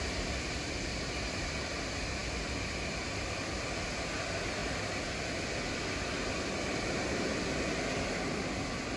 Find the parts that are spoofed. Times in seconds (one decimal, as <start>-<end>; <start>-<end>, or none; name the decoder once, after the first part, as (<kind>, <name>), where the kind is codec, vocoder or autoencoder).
none